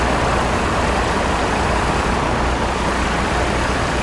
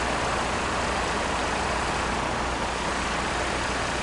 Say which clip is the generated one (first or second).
first